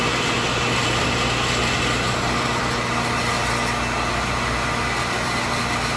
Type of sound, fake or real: real